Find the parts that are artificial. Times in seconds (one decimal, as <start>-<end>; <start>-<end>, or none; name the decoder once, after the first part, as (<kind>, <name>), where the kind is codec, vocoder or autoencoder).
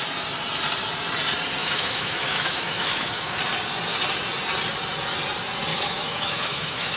1.6-3.4 (autoencoder, DAC-VAE); 5.7-7.0